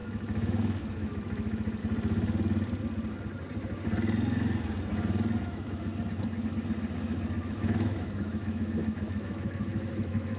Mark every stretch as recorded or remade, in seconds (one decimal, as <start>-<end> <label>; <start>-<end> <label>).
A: 0.0-1.8 remade; 1.8-5.4 recorded; 5.4-5.9 remade; 5.9-7.4 recorded; 7.4-10.4 remade